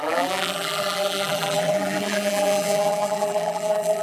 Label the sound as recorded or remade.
remade